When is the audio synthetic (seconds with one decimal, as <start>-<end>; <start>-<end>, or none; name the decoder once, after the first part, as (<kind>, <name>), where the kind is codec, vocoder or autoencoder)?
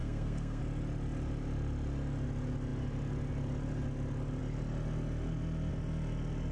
0.0-0.6 (codec, SNAC)